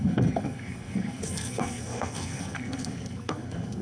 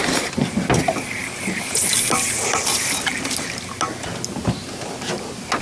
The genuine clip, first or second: second